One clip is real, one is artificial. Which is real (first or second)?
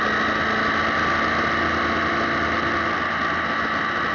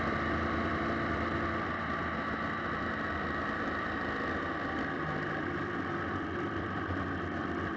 first